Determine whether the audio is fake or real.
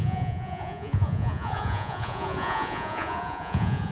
fake